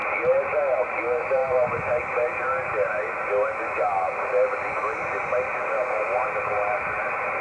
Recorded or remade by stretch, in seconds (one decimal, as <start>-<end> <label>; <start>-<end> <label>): 0.0-7.4 recorded